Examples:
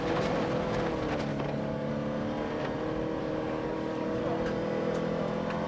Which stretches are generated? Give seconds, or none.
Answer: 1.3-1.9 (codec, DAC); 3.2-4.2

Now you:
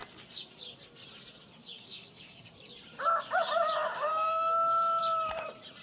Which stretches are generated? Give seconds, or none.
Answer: 1.6-2.5 (codec, DAC); 3.9-5.0

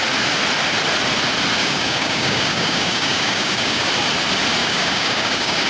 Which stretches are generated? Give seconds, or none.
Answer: 1.6-3.9 (codec, DAC); 4.6-5.7

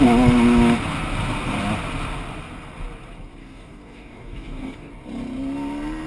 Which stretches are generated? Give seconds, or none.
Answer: 3.4-4.9 (codec, DAC)

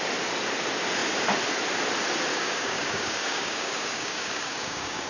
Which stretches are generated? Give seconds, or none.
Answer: 2.3-5.1 (codec, DAC)

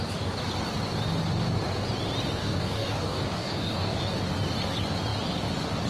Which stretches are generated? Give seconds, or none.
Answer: 2.4-4.0 (codec, DAC)

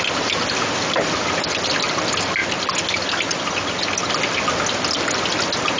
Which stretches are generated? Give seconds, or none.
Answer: none